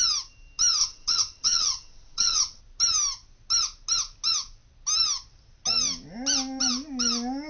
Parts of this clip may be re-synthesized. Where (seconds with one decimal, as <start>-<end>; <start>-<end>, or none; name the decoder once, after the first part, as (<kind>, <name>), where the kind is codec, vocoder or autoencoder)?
0.8-2.6 (vocoder, WaveNeXt)